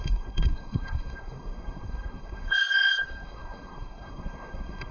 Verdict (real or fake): fake